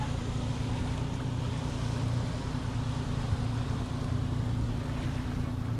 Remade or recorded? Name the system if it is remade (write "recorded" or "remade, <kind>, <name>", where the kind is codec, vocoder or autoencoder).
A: recorded